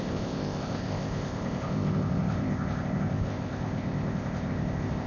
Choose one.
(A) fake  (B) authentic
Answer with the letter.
A